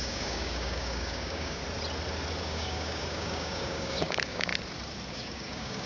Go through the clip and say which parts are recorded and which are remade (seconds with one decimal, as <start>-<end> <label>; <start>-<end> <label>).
0.0-1.6 remade; 1.6-2.4 recorded; 2.4-4.5 remade; 4.5-5.1 recorded; 5.1-5.9 remade